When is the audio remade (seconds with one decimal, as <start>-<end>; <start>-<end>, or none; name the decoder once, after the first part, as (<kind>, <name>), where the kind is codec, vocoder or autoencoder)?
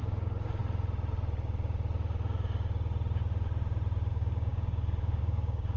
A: 0.0-0.6 (codec, DAC); 4.1-5.8